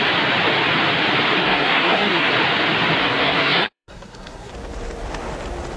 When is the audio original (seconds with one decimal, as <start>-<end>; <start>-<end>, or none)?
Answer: 0.0-1.4; 2.3-3.0; 4.5-5.8

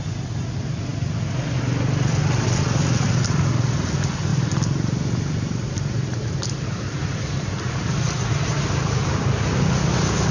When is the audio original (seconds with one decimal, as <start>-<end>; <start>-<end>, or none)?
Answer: 0.0-4.3; 9.2-10.3

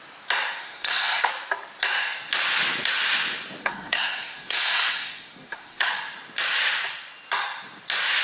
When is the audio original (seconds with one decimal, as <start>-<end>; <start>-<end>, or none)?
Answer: 0.0-0.6; 1.3-3.6; 5.9-8.2